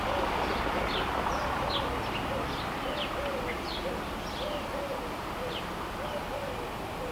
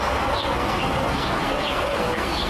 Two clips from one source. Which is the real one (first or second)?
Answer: first